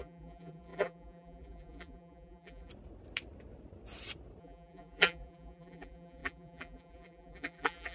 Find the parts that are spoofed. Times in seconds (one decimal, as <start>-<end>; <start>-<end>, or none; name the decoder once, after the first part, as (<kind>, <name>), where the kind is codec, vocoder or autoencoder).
0.0-2.7 (vocoder, BigVGAN v2); 4.4-7.9